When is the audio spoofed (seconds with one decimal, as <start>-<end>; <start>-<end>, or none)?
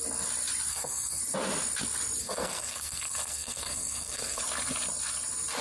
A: 0.7-1.2; 2.2-4.4